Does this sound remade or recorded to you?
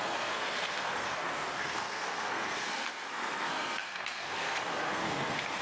remade